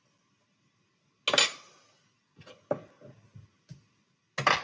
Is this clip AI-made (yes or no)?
no